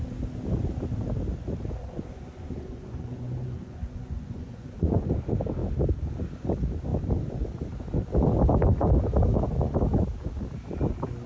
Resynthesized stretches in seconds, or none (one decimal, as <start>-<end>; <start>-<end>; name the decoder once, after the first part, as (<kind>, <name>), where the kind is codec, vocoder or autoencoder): 1.8-5.1 (vocoder, Vocos)